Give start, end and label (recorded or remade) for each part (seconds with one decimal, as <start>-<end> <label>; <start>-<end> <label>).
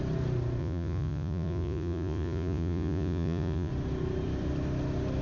0.0-0.6 recorded; 0.6-3.7 remade; 3.7-5.2 recorded